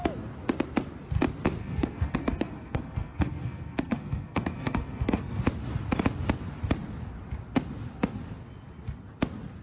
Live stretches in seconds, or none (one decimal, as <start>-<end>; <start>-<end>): 0.0-1.6; 5.4-9.6